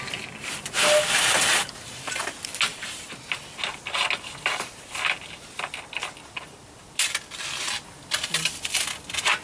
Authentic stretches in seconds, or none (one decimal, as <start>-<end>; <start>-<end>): 0.0-9.4